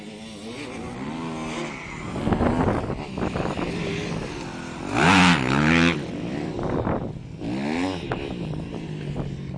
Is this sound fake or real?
real